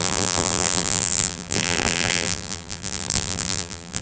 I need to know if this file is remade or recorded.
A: remade